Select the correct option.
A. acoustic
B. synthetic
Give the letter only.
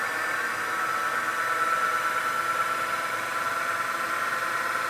A